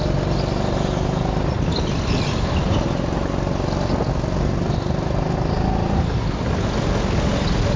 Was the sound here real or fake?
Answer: real